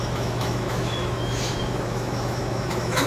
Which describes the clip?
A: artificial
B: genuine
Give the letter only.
A